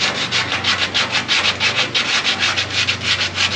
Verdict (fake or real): real